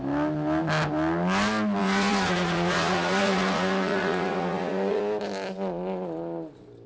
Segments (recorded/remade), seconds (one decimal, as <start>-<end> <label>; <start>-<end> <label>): 0.0-1.8 recorded; 1.8-5.0 remade; 5.0-6.9 recorded